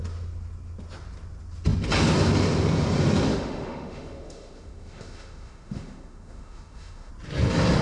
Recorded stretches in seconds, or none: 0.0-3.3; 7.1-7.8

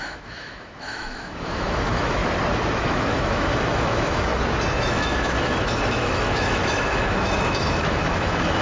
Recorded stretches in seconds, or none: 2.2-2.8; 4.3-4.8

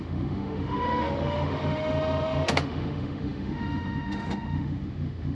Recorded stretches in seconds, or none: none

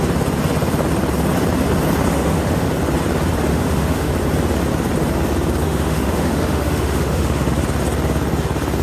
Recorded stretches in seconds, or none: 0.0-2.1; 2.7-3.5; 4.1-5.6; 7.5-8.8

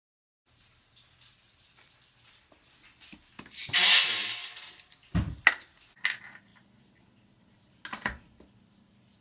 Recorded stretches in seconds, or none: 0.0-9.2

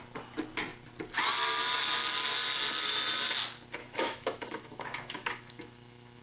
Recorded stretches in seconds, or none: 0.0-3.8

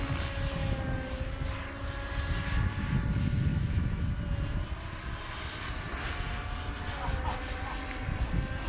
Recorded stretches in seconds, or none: 0.0-3.5; 4.1-8.7